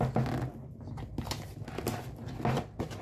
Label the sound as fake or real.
real